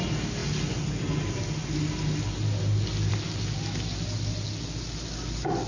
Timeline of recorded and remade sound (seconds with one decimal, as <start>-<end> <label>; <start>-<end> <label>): 0.0-5.7 recorded